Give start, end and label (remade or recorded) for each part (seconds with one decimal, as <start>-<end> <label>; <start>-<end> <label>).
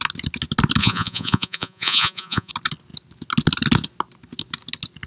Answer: 0.0-0.8 recorded; 0.8-2.5 remade; 2.5-5.1 recorded